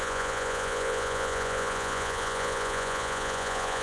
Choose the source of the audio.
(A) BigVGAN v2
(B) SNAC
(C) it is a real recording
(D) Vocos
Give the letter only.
D